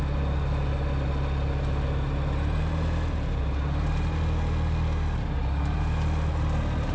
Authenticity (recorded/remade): recorded